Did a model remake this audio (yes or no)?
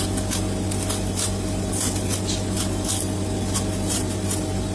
no